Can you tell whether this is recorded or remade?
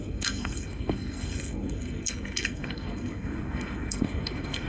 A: remade